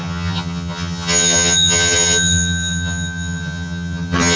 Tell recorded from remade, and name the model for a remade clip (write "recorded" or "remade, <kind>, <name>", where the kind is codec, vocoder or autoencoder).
remade, vocoder, HiFi-GAN